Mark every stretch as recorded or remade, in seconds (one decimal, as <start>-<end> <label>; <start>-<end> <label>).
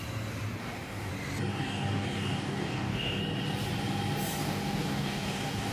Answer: 0.0-0.6 recorded; 0.6-1.1 remade; 1.1-1.5 recorded; 1.5-3.2 remade; 3.2-4.4 recorded; 4.4-5.7 remade